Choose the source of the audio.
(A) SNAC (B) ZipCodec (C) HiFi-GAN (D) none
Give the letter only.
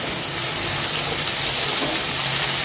D